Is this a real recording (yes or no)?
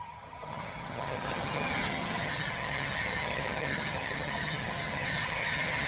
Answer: no